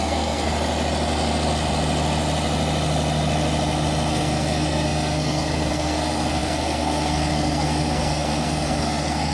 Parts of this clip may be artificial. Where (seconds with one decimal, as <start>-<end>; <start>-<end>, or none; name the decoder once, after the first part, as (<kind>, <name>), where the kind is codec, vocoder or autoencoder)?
0.0-0.5 (codec, SNAC); 4.1-9.3